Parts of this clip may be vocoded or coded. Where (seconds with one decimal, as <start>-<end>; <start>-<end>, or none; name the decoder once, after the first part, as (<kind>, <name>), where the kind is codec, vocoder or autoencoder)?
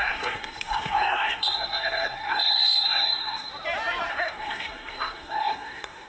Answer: 0.0-3.5 (codec, SNAC); 4.1-6.1